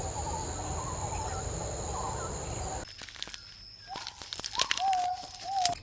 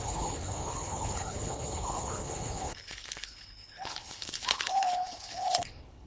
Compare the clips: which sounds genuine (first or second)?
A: first